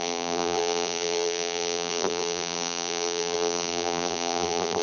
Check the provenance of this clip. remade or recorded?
remade